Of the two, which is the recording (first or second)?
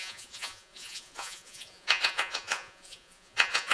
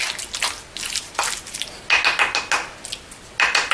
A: second